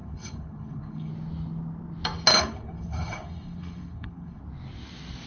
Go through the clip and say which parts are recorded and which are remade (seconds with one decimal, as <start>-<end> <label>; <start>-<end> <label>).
0.0-1.1 remade; 1.1-2.3 recorded; 2.3-4.4 remade; 4.4-5.3 recorded